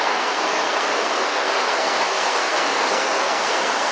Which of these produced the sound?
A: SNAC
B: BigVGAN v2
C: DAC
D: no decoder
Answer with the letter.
A